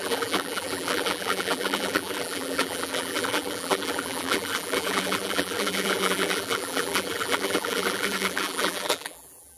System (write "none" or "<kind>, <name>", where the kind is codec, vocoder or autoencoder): vocoder, BigVGAN v2